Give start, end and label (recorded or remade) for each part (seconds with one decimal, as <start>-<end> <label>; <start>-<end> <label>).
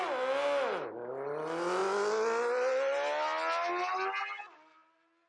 0.0-5.3 recorded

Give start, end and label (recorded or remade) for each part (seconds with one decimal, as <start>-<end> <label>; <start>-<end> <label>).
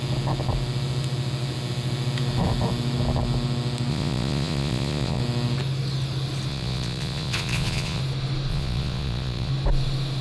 0.0-3.9 recorded; 3.9-5.2 remade; 5.2-6.5 recorded; 6.5-8.0 remade; 8.0-8.5 recorded; 8.5-9.5 remade; 9.5-10.2 recorded